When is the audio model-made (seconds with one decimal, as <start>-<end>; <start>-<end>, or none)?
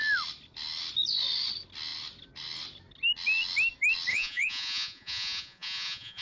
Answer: 4.1-6.2